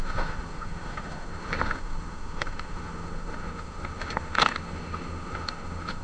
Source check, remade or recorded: remade